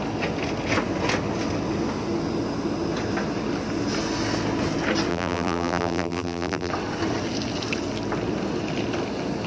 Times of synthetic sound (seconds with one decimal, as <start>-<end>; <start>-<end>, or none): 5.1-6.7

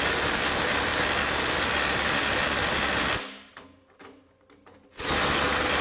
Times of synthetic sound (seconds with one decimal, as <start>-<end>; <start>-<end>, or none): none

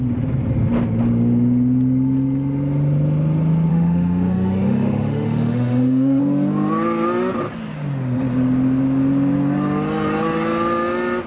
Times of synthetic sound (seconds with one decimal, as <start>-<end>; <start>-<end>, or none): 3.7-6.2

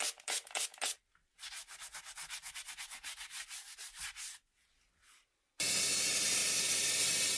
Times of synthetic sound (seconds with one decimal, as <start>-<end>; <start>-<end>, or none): 2.2-2.7; 6.4-6.9